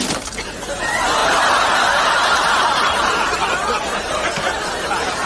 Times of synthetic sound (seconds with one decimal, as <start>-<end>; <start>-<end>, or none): none